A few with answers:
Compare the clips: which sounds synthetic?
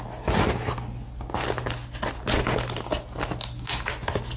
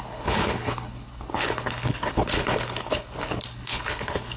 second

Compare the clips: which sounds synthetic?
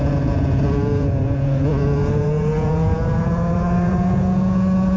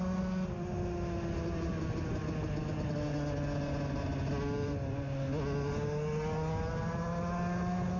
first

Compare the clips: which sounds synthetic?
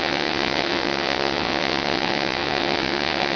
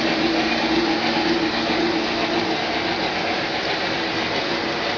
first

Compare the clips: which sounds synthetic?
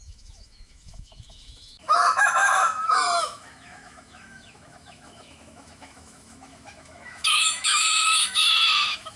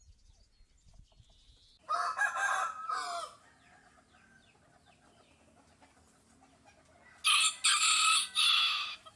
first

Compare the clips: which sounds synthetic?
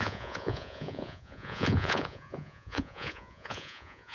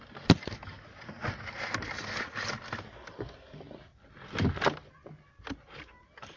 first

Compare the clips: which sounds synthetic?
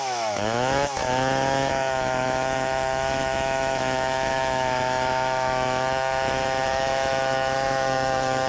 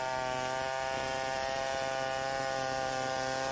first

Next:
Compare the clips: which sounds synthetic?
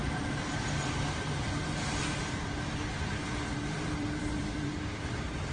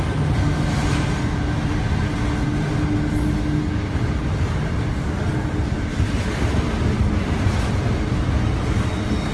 first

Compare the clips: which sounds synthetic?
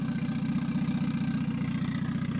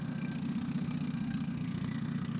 second